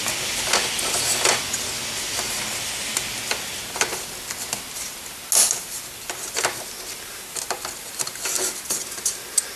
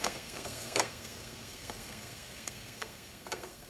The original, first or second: first